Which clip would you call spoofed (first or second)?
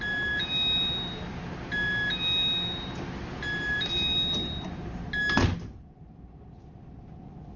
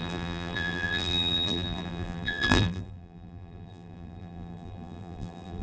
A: second